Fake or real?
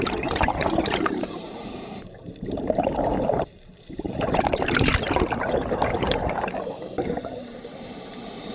fake